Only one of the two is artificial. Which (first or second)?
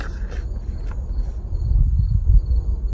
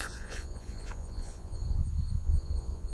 second